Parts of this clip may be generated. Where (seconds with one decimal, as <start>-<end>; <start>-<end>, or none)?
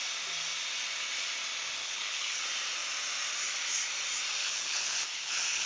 1.8-2.4; 4.4-5.7